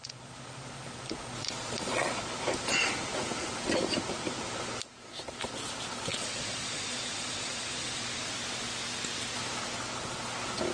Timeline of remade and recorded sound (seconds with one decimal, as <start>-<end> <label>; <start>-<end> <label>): 0.0-1.4 recorded; 1.4-2.2 remade; 2.2-6.1 recorded; 6.1-8.0 remade; 8.0-10.7 recorded